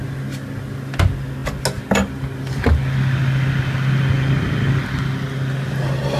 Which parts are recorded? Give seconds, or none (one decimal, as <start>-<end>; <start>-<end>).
0.0-6.2